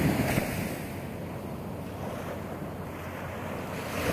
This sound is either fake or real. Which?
real